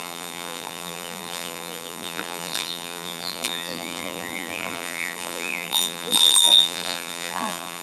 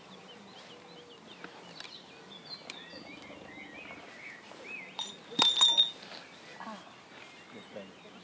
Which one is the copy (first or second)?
first